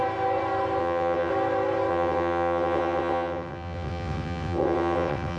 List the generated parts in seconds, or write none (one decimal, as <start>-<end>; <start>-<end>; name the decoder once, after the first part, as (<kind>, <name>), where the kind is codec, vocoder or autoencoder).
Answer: 0.8-1.3 (vocoder, WaveNeXt); 1.9-5.4